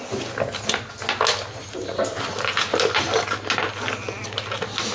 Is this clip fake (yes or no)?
no